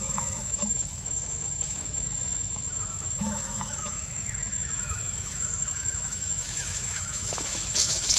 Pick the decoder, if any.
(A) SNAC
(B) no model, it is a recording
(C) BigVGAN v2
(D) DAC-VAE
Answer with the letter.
D